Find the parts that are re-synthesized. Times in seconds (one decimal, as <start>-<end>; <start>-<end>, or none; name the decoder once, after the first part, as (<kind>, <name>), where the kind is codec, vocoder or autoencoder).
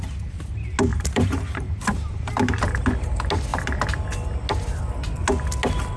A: 0.9-2.4 (vocoder, BigVGAN v2)